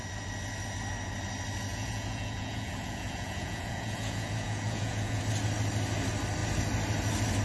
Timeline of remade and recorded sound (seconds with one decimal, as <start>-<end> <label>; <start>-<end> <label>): 0.0-1.7 recorded; 1.7-5.2 remade; 5.2-7.4 recorded